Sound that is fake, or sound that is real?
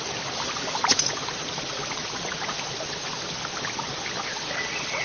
real